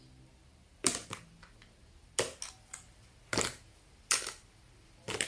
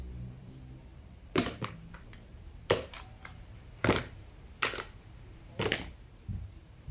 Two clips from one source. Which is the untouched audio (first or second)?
first